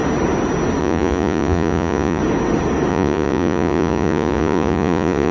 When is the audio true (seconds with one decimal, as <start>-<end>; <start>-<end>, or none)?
0.0-0.8; 2.2-2.9